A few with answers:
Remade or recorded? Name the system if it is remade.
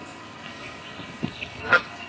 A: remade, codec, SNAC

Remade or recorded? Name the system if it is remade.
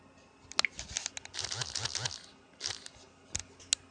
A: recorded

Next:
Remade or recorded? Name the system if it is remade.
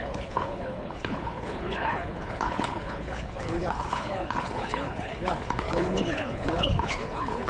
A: remade, codec, HILCodec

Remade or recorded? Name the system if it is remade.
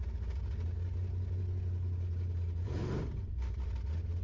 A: recorded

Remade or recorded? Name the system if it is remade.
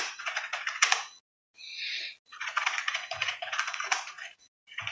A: remade, vocoder, Vocos